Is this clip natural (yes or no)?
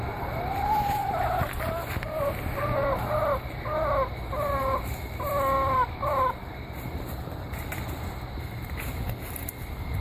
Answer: yes